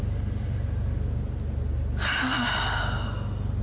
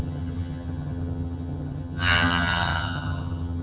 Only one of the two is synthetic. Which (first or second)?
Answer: second